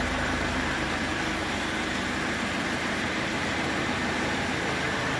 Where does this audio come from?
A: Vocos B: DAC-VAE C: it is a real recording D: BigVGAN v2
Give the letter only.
D